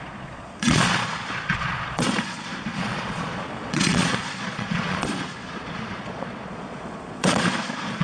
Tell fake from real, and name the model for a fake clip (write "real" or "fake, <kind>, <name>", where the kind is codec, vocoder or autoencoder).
fake, vocoder, Vocos